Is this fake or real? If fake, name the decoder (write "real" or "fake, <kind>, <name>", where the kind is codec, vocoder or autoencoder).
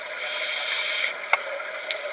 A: real